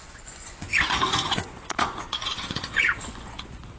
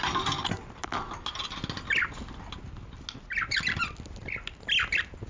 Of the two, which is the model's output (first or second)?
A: first